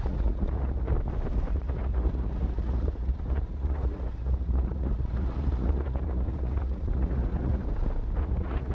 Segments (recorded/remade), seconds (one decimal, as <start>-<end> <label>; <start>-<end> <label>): 0.0-0.9 remade; 0.9-1.5 recorded; 1.5-7.6 remade; 7.6-8.2 recorded; 8.2-8.7 remade